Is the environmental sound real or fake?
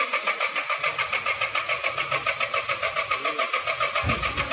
real